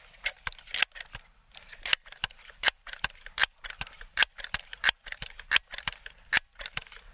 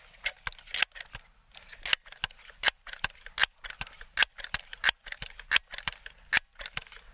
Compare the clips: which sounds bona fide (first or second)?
second